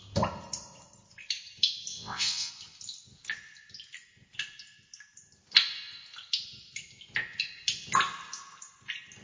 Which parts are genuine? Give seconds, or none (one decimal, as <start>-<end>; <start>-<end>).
0.0-1.9; 2.5-9.2